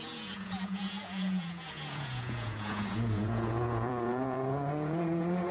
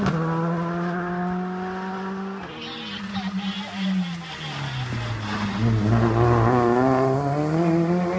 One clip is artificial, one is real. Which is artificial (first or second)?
first